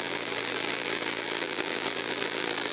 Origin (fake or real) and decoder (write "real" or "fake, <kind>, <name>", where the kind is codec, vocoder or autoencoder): fake, vocoder, BigVGAN v2